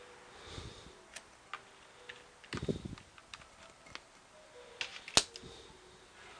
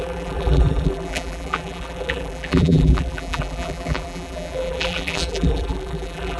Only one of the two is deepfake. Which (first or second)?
second